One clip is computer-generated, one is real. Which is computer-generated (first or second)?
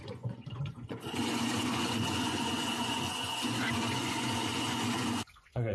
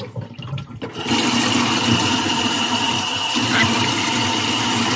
first